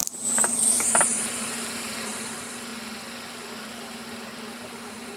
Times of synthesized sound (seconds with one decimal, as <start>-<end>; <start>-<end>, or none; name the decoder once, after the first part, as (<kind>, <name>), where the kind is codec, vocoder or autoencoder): 0.0-2.7 (vocoder, BigVGAN v2); 3.7-5.2